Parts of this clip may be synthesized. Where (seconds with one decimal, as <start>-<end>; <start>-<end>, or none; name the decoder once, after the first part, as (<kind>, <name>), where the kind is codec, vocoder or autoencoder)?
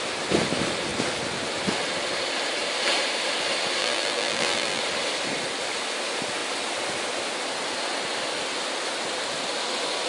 3.8-4.8 (vocoder, BigVGAN v2)